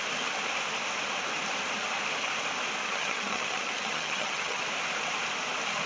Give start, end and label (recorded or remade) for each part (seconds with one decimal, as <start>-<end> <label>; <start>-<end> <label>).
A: 0.0-2.8 recorded; 2.8-4.6 remade; 4.6-5.9 recorded